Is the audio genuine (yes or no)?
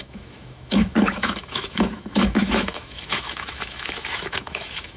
no